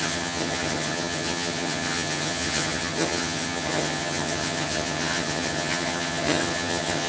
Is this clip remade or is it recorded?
remade